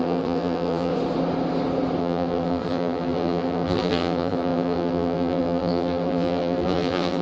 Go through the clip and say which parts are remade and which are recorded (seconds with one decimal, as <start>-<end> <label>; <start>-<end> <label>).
0.0-0.9 remade; 0.9-2.0 recorded; 2.0-7.2 remade